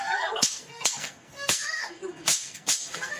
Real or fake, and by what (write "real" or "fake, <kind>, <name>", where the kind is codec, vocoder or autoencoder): fake, codec, SNAC